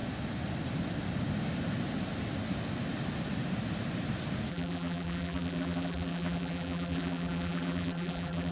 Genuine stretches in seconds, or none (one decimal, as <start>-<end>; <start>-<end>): 0.0-4.5

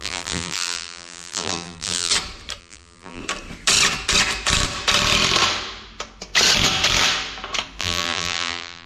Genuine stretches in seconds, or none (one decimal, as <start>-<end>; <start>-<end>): 2.1-2.6; 3.2-7.8

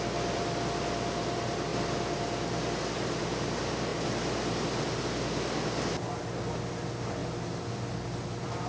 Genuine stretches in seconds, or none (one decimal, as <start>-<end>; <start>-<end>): 0.0-8.7